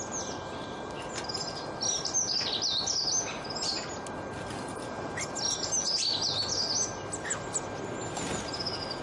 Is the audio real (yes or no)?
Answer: yes